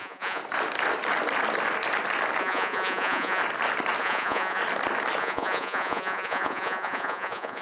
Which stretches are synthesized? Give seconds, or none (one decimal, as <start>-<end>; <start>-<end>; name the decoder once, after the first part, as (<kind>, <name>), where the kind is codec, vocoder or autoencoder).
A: 0.0-0.4 (vocoder, Vocos); 2.4-3.4; 4.0-4.6; 5.2-7.6